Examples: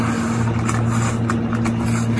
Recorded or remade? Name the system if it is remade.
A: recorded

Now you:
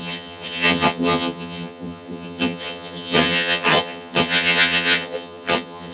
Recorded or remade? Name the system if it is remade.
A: remade, vocoder, HiFi-GAN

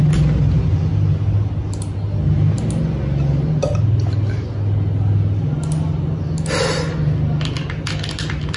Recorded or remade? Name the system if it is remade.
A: recorded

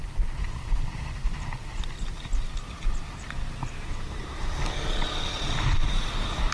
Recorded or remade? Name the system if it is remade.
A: recorded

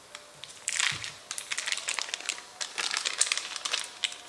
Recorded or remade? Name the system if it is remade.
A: recorded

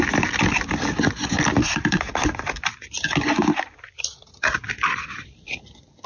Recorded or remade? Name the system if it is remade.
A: recorded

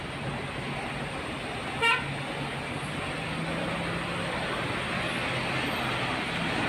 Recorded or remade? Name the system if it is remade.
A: recorded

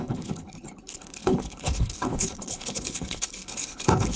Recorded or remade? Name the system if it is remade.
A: remade, codec, HILCodec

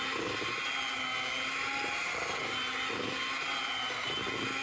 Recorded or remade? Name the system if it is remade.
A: recorded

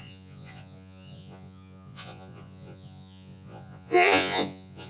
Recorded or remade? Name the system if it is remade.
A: remade, vocoder, Vocos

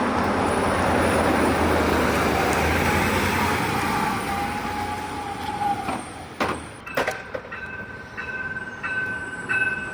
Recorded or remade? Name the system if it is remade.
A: recorded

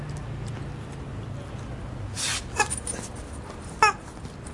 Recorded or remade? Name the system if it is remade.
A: recorded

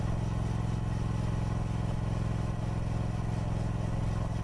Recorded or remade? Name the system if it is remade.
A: recorded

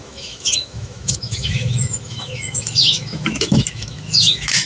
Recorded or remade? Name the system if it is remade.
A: remade, autoencoder, DAC-VAE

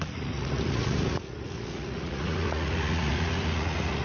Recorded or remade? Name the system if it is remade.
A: remade, vocoder, Vocos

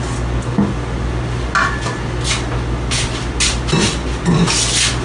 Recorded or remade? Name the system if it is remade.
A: recorded